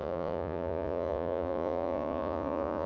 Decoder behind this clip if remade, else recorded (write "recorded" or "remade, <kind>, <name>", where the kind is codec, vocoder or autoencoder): remade, vocoder, Vocos